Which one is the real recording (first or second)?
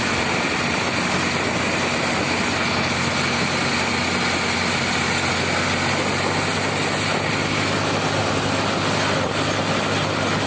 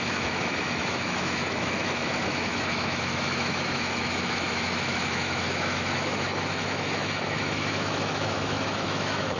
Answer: first